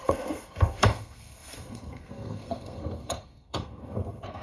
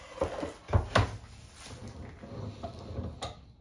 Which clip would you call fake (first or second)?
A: first